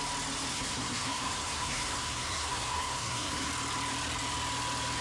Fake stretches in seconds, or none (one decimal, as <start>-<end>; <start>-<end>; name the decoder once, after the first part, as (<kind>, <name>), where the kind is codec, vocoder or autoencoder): 0.5-3.5 (codec, SNAC)